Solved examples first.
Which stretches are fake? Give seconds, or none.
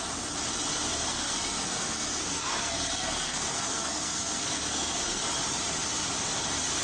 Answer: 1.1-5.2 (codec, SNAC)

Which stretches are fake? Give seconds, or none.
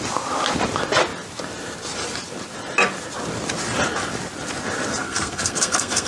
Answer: 5.0-6.1 (codec, SNAC)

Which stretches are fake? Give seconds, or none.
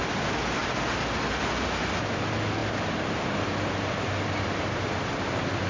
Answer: none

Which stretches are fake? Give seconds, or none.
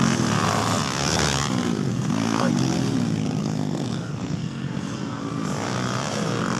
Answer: 1.9-2.5 (codec, SNAC); 3.4-5.2